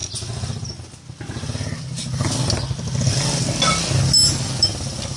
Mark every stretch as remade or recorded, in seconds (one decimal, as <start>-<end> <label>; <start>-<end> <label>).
0.0-5.2 recorded